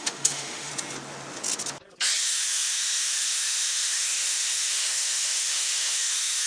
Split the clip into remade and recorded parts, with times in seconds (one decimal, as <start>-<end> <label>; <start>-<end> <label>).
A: 0.0-0.7 remade; 0.7-2.2 recorded; 2.2-6.5 remade